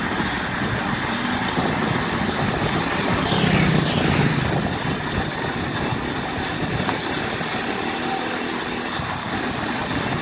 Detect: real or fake real